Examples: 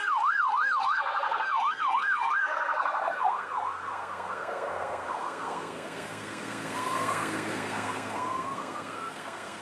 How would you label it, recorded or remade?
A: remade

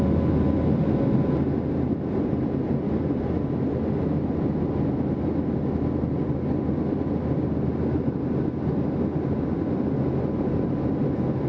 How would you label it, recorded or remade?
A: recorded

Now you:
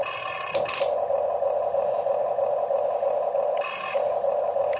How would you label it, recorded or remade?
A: recorded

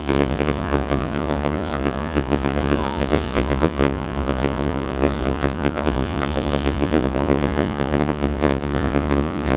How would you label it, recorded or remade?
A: remade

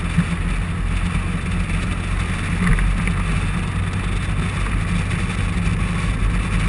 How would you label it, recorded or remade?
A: recorded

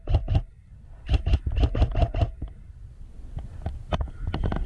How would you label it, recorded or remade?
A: recorded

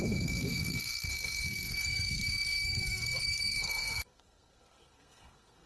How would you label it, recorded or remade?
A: remade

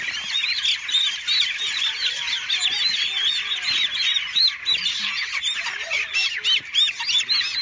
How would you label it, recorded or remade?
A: recorded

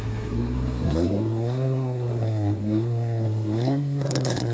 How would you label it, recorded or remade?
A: remade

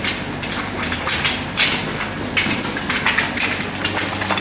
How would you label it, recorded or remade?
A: recorded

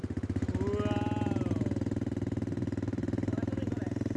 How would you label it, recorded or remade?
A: recorded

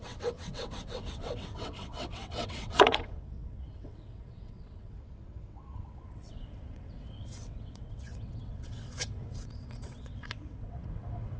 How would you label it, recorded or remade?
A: remade